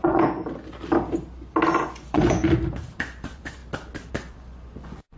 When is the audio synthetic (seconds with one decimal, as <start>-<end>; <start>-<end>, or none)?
0.0-0.4; 1.8-2.4; 3.0-3.6; 4.1-5.2